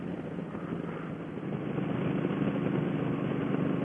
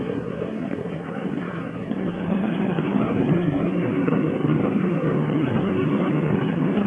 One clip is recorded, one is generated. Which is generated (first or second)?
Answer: second